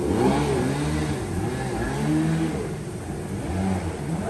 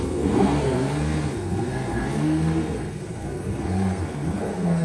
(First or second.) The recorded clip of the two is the first